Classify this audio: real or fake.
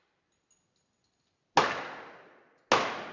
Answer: real